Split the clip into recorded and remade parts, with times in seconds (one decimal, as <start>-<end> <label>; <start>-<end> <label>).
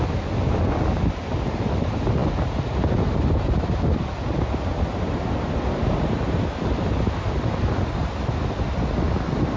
0.0-9.6 recorded